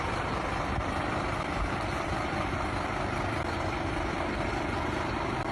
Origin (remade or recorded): remade